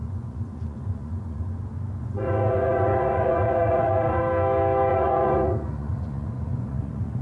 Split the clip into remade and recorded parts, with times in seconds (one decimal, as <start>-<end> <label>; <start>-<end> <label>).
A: 0.0-1.6 remade; 1.6-2.0 recorded; 2.0-4.2 remade; 4.2-4.9 recorded; 4.9-7.2 remade